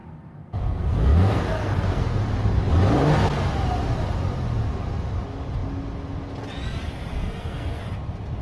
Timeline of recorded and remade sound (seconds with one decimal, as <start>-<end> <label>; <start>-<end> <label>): 0.0-2.2 remade; 2.2-7.1 recorded; 7.1-7.8 remade; 7.8-8.4 recorded